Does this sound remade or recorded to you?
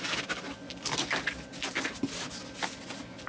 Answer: recorded